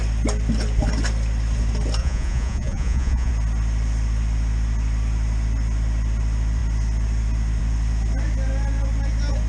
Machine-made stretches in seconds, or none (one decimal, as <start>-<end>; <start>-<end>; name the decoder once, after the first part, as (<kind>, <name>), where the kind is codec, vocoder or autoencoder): 2.0-3.3 (vocoder, Vocos)